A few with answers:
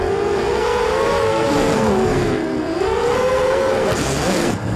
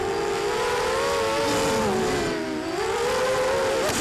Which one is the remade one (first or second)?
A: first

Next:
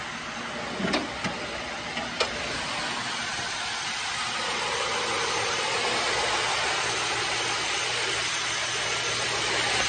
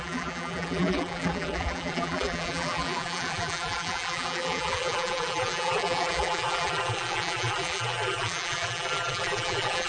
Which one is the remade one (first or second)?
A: second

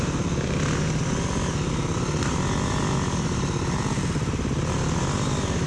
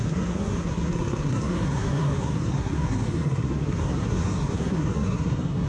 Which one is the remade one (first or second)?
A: second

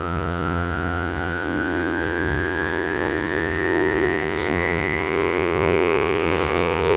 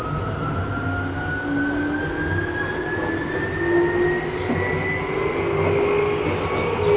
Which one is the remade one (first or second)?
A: first